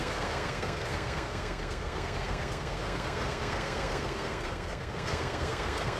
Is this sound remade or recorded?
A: remade